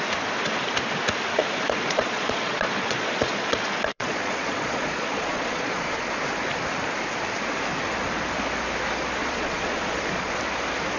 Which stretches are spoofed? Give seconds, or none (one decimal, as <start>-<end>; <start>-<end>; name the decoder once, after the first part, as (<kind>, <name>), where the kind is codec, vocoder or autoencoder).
1.4-6.0 (vocoder, Vocos); 9.2-10.4